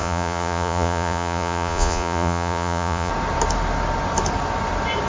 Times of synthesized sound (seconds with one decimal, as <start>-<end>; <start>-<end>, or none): 0.0-3.1